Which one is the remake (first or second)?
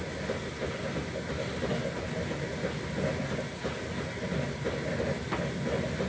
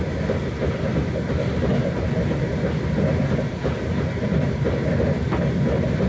second